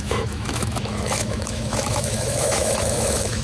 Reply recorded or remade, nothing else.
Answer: remade